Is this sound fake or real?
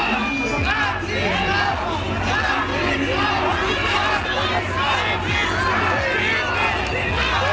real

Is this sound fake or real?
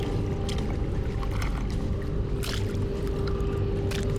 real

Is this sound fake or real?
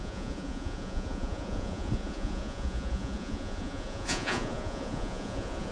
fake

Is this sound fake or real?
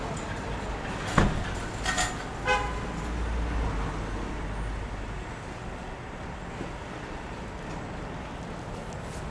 real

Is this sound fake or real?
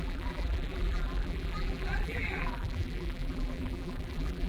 fake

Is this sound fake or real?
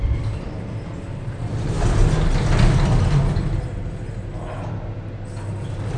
real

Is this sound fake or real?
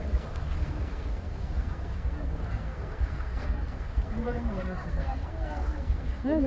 fake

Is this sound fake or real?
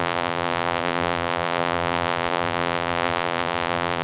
fake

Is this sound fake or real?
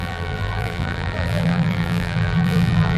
fake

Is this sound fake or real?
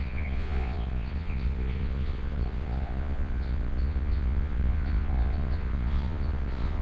fake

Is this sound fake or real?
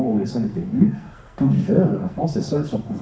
fake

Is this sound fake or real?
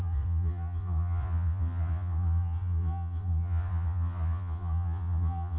fake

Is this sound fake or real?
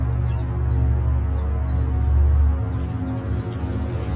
real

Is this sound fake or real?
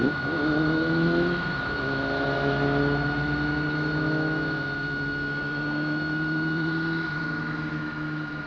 fake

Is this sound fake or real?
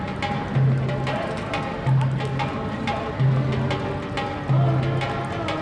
real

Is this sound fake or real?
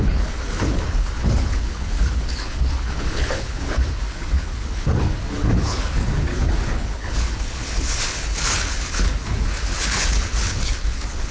fake